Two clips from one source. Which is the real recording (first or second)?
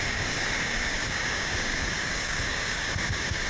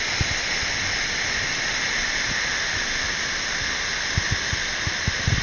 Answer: second